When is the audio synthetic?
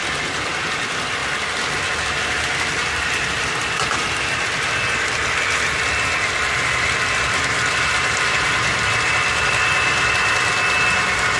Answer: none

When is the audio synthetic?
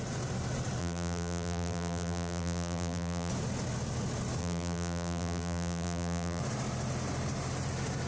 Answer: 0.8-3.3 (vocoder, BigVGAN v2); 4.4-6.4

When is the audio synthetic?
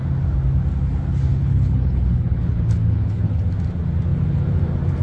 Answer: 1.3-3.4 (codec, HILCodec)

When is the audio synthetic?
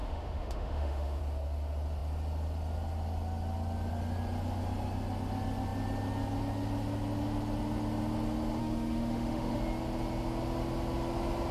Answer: 0.0-1.2 (autoencoder, DAC-VAE); 8.6-9.6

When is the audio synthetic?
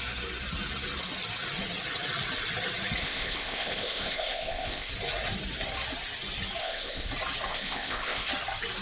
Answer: 3.0-4.9 (codec, ZipCodec); 6.6-7.1; 7.5-8.3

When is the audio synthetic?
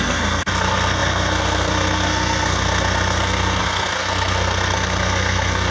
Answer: 0.0-5.7 (codec, SNAC)